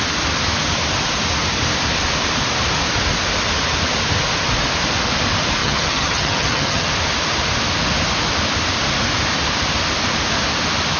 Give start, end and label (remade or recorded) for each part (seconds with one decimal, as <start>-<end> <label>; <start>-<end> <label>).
0.0-5.6 recorded; 5.6-6.9 remade; 6.9-11.0 recorded